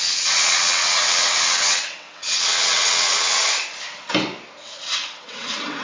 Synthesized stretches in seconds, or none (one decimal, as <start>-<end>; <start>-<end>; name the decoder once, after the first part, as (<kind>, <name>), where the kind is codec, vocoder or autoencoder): 0.0-3.4 (vocoder, WaveNeXt); 4.8-5.8